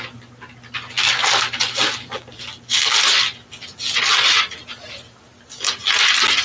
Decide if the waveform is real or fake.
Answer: real